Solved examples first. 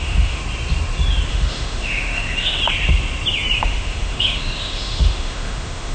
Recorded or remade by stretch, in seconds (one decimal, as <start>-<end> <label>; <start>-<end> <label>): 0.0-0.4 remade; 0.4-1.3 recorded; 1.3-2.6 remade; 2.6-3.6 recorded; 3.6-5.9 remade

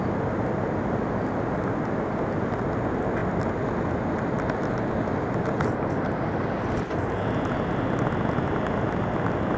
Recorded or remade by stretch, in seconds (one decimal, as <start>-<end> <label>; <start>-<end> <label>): 0.0-9.6 recorded

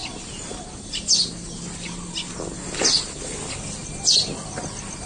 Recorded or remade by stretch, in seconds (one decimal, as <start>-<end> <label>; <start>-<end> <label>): 0.0-5.1 recorded